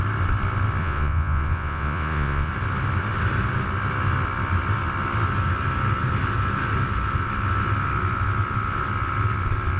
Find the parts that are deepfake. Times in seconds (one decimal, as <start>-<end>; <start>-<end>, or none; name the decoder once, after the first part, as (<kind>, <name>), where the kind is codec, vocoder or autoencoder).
0.8-2.5 (vocoder, Vocos)